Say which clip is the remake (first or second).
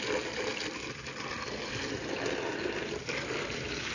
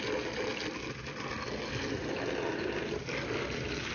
first